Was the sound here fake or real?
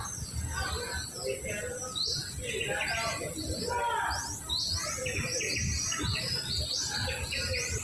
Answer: real